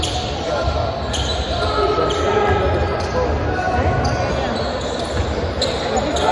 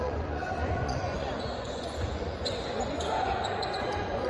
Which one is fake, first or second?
second